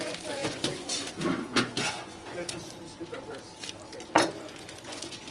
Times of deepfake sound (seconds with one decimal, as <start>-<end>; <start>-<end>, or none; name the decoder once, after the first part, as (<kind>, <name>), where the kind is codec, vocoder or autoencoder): 0.0-2.9 (vocoder, Vocos); 4.1-5.3